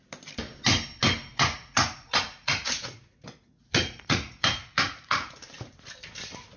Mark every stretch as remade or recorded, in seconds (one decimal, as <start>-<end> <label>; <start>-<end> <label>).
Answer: 0.0-1.3 recorded; 1.3-5.3 remade; 5.3-6.6 recorded